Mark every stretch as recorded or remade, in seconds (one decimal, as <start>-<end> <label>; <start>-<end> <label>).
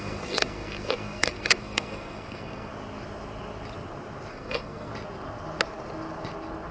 0.0-2.7 remade; 2.7-4.3 recorded; 4.3-4.9 remade; 4.9-6.7 recorded